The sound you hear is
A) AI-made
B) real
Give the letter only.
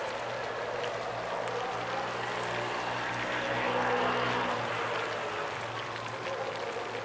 B